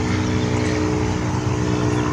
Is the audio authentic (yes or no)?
yes